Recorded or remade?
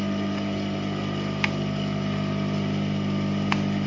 recorded